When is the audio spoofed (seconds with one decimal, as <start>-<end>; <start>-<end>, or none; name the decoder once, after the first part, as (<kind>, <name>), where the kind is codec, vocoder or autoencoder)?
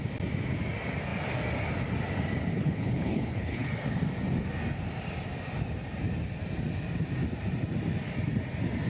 2.5-3.7 (codec, HILCodec)